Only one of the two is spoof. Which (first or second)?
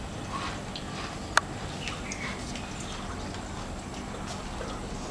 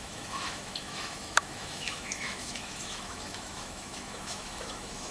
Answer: second